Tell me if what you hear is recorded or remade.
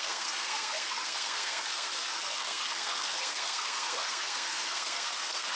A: remade